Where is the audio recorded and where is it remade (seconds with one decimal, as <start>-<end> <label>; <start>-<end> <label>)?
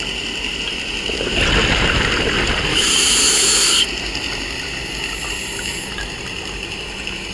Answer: 0.0-2.7 recorded; 2.7-3.7 remade; 3.7-7.3 recorded